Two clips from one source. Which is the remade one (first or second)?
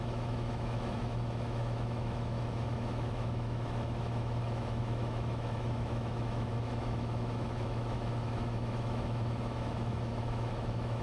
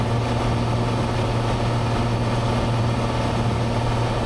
first